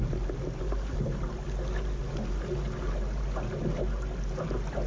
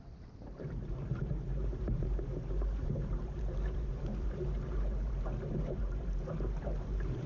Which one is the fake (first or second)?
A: second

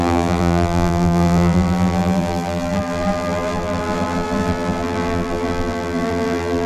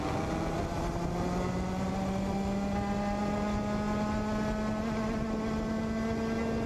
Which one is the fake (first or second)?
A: first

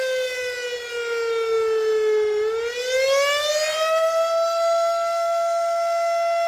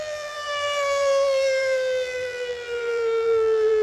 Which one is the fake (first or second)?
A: second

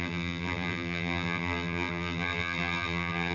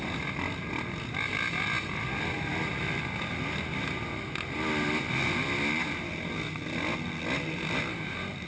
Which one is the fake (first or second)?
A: first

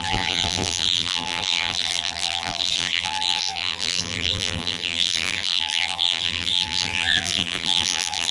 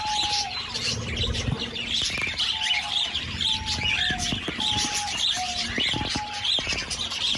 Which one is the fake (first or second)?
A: first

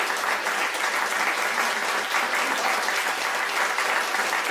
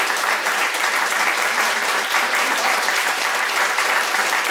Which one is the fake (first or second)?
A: second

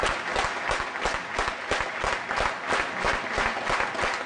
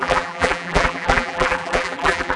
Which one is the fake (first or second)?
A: second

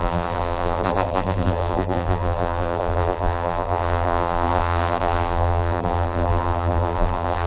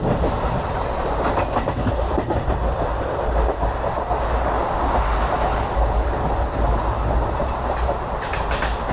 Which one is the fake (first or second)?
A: first